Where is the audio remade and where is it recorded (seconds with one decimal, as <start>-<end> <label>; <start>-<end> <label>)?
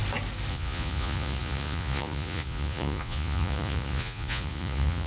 0.0-0.5 recorded; 0.5-5.1 remade